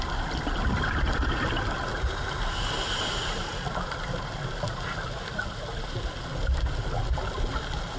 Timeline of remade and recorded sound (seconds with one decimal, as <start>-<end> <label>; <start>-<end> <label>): 0.0-8.0 recorded